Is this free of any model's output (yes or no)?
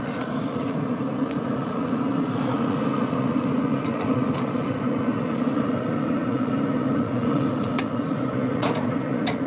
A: no